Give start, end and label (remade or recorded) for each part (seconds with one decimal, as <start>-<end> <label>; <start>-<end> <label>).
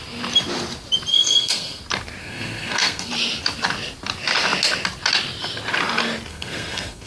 0.0-1.1 recorded; 1.1-1.8 remade; 1.8-2.2 recorded; 2.2-3.1 remade; 3.1-6.3 recorded; 6.3-7.1 remade